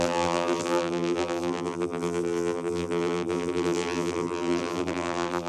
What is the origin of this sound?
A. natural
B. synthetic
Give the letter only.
B